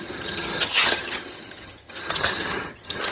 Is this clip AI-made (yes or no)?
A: yes